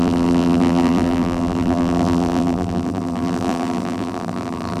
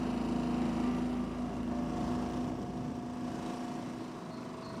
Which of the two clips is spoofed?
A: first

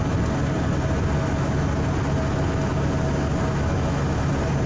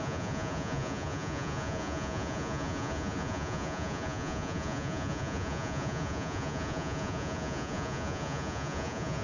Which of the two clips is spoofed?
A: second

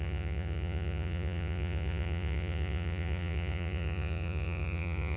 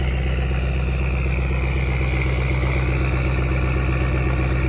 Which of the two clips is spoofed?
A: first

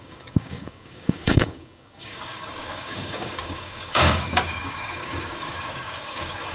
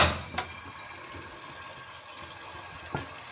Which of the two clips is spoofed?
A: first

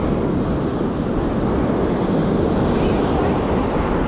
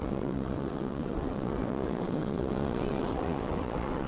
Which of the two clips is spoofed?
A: second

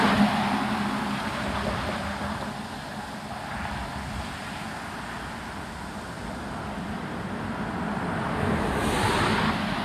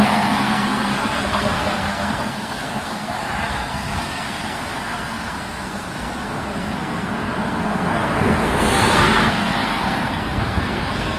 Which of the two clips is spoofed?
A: second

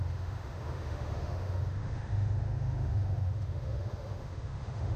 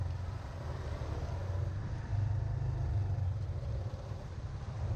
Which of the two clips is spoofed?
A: first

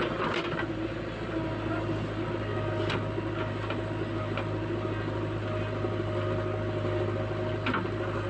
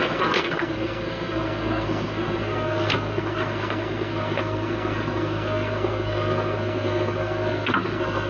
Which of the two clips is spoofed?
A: second